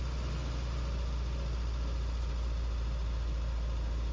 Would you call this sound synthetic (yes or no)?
no